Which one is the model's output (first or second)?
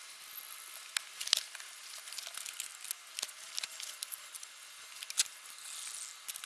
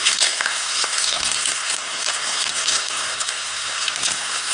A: second